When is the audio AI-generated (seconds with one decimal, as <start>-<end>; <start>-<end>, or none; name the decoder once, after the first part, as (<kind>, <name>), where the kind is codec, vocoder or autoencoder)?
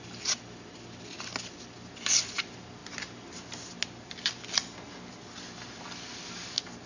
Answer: none